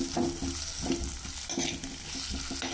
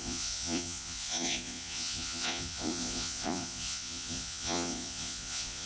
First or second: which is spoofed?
second